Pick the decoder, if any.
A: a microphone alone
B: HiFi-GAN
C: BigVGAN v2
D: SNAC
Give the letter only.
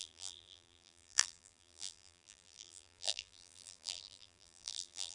C